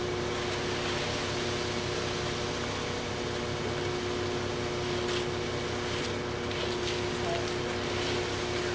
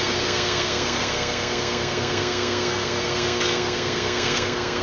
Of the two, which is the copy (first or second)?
second